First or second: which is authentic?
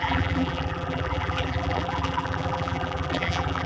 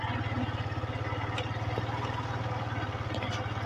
second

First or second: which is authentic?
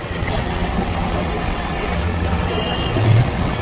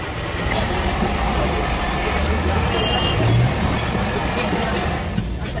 second